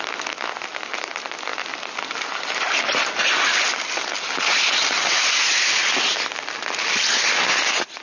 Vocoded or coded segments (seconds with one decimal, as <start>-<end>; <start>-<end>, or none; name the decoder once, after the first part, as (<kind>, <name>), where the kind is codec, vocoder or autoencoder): none